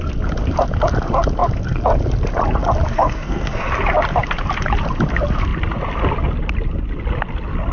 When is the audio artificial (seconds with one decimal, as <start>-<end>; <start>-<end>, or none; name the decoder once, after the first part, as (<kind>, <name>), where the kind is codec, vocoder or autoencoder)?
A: 2.9-3.7 (codec, SNAC)